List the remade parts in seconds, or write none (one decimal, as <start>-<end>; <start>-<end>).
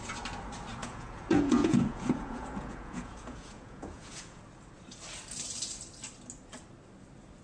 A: 0.8-4.4